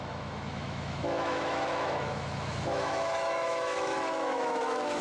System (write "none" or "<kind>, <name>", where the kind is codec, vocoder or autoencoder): autoencoder, DAC-VAE